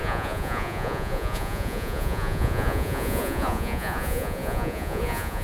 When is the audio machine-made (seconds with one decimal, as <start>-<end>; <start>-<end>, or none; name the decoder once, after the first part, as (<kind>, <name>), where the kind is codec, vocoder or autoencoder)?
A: 0.0-5.4 (vocoder, Vocos)